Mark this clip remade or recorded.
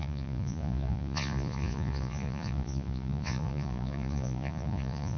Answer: remade